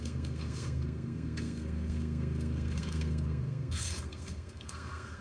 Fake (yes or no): yes